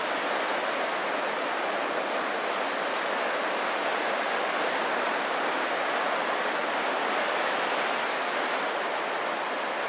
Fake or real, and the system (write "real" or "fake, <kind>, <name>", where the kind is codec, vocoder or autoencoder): real